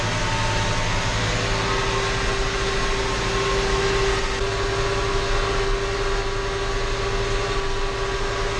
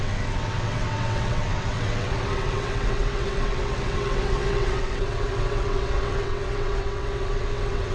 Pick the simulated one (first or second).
second